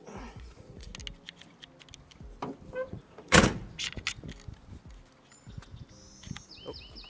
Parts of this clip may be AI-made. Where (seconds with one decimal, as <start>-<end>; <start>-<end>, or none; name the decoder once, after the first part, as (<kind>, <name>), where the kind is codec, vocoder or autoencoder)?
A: 0.0-0.9 (vocoder, Vocos); 2.9-3.6